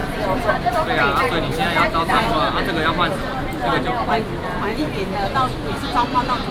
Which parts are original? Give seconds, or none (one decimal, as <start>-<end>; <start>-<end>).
0.0-6.5